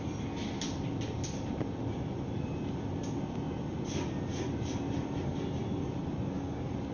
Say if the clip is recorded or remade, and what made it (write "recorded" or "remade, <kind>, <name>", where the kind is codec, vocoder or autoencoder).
recorded